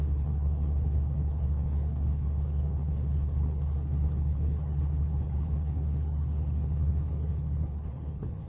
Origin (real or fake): fake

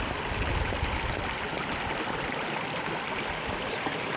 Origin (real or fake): real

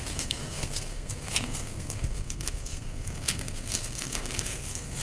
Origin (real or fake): fake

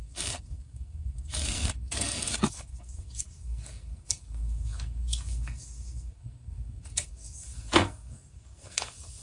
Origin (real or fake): fake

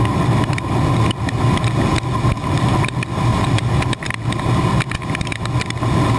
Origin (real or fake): real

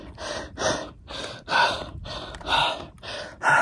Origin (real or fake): real